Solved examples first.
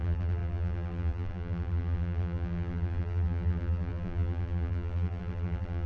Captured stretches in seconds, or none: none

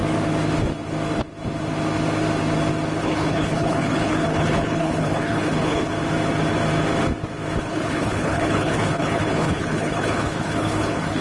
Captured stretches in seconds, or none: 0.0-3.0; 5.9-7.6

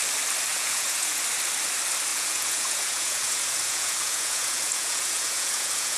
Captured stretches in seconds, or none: 0.0-0.5; 1.2-2.1